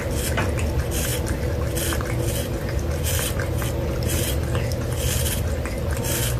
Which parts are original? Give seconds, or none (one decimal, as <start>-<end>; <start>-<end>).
0.0-6.4